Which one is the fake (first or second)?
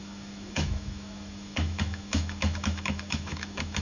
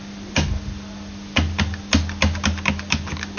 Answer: first